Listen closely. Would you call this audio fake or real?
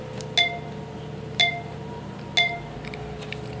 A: real